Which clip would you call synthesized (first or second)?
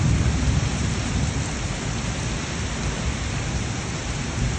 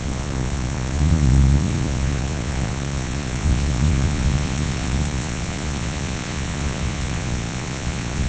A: second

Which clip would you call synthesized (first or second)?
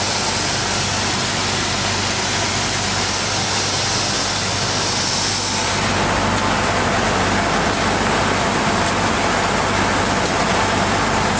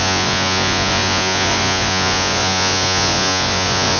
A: second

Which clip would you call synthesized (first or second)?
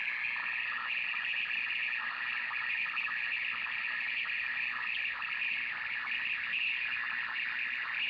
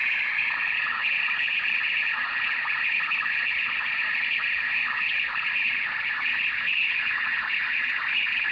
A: second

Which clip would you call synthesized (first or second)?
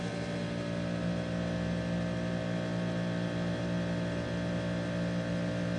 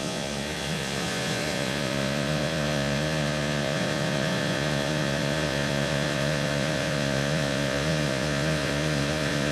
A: second